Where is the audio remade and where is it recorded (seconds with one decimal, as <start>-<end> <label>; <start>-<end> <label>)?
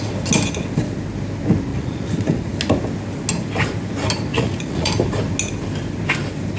0.0-1.7 recorded; 1.7-2.5 remade; 2.5-4.3 recorded; 4.3-4.9 remade; 4.9-6.6 recorded